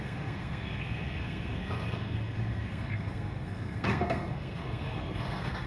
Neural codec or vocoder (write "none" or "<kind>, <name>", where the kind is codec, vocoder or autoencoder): codec, SNAC